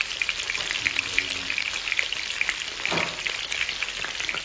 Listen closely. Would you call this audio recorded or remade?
recorded